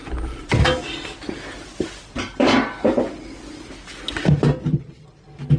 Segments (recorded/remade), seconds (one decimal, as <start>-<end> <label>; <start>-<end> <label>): 0.0-3.9 recorded; 3.9-4.8 remade; 4.8-5.6 recorded